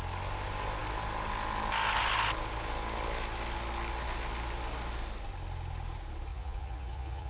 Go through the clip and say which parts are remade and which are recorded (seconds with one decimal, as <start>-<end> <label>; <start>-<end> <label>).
0.0-6.3 recorded; 6.3-7.3 remade